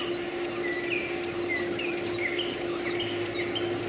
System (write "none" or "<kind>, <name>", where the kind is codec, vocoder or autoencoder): none